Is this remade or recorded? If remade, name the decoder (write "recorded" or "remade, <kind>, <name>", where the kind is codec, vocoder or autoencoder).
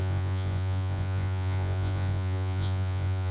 remade, vocoder, Vocos